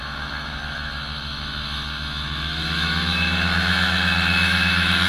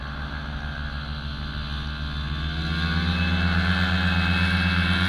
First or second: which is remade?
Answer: first